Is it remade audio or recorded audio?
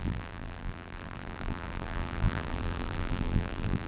remade